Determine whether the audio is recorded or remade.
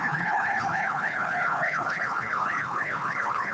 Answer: remade